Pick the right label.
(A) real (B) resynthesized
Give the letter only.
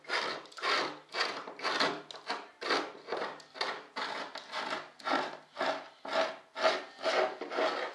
A